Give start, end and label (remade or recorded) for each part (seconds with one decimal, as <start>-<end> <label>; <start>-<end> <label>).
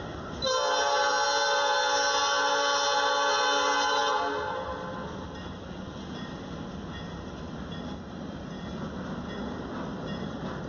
0.0-10.7 recorded